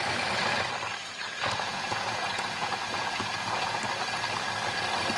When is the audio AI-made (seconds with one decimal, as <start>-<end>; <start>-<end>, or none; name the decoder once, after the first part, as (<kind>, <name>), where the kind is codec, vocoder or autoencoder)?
1.0-3.8 (vocoder, Vocos)